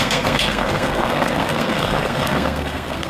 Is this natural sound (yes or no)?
no